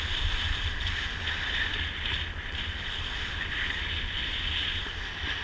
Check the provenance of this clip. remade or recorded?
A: recorded